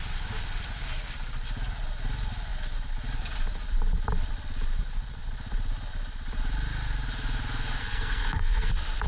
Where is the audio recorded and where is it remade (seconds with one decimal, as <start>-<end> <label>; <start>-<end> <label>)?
0.0-7.8 recorded; 7.8-8.7 remade; 8.7-9.1 recorded